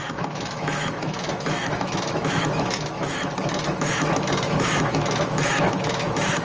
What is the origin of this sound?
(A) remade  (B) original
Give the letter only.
A